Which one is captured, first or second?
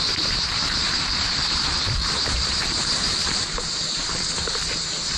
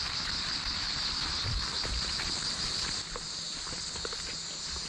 second